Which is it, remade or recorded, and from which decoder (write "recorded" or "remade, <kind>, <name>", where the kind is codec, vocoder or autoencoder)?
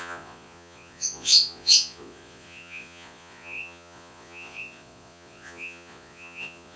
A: remade, vocoder, Vocos